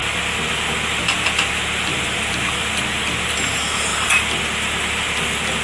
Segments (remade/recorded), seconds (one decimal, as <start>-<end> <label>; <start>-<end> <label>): 0.0-1.9 recorded; 1.9-2.7 remade; 2.7-3.9 recorded; 3.9-4.4 remade; 4.4-5.6 recorded